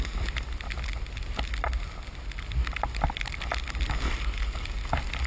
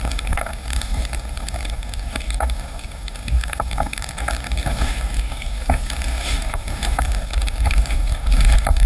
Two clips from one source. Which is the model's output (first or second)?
second